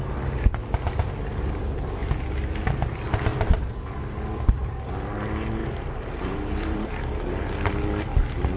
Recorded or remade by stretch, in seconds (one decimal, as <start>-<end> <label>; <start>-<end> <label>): 0.0-3.3 recorded; 3.3-3.8 remade; 3.8-5.6 recorded; 5.6-7.0 remade; 7.0-8.6 recorded